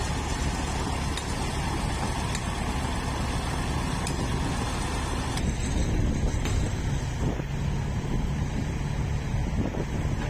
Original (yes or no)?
yes